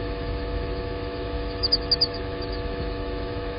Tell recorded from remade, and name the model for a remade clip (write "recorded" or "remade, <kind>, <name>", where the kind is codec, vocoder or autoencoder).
remade, autoencoder, DAC-VAE